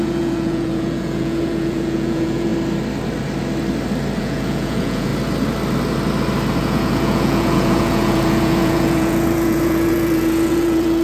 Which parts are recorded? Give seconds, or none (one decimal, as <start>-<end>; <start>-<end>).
2.5-4.2; 5.1-6.6